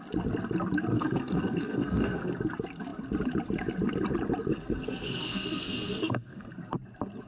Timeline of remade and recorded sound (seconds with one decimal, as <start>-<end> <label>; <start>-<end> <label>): 0.0-0.9 recorded; 0.9-2.3 remade; 2.3-4.5 recorded; 4.5-6.5 remade; 6.5-7.3 recorded

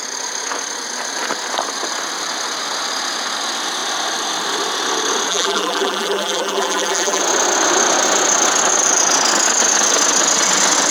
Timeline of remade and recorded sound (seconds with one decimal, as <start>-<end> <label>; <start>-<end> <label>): 0.0-5.3 recorded; 5.3-7.2 remade; 7.2-10.9 recorded